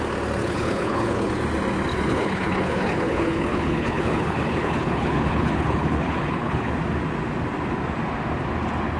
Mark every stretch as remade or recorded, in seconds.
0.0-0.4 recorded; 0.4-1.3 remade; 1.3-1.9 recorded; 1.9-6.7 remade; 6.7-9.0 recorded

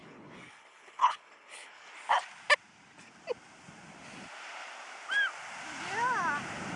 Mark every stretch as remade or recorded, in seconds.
0.0-1.9 remade; 1.9-6.8 recorded